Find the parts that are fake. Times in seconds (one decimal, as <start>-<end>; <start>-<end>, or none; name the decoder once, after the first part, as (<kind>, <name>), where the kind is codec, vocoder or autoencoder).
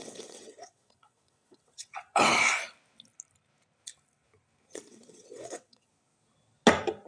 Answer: 0.0-2.3 (vocoder, WaveNeXt); 4.9-5.9